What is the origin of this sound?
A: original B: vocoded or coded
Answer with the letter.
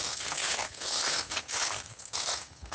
B